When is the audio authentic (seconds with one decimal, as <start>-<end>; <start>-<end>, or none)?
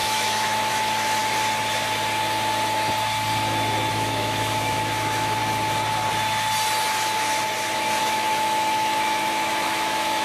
1.2-3.9; 5.4-8.0